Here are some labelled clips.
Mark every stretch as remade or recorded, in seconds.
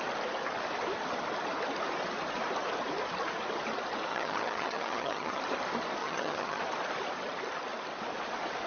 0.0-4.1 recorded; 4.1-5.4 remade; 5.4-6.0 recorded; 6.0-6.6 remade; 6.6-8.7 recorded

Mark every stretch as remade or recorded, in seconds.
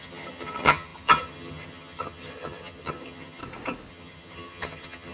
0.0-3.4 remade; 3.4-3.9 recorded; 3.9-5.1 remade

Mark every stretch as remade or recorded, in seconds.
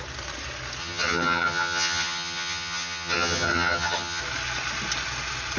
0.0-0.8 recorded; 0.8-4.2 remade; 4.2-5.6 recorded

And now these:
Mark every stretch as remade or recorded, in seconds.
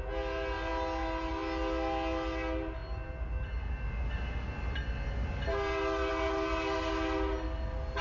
0.0-8.0 recorded